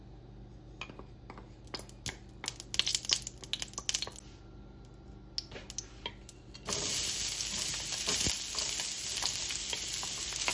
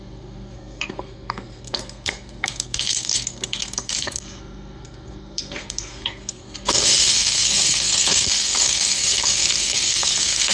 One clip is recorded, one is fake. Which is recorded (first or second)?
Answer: first